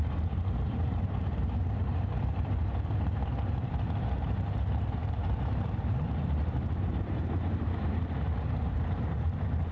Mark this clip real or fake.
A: fake